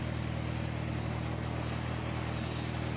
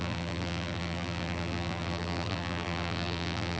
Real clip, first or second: first